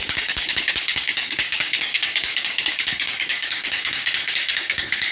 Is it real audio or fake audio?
fake